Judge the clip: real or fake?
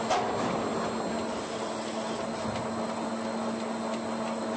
real